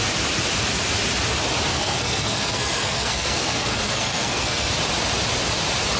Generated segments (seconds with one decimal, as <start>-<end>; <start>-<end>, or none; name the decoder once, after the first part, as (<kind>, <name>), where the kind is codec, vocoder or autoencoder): 1.7-4.7 (codec, SNAC)